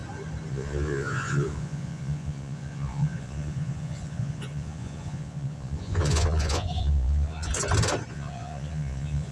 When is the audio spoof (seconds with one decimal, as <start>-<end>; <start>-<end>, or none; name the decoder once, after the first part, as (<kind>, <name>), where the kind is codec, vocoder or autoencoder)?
0.5-7.5 (vocoder, Vocos); 8.1-9.3